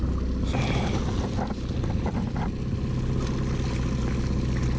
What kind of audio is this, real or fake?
real